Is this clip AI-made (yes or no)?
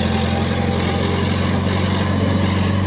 no